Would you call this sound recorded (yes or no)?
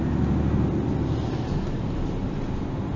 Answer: yes